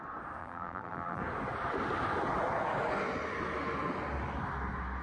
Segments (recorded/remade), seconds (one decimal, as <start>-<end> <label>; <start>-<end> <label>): 0.0-0.4 recorded; 0.4-1.2 remade; 1.2-5.0 recorded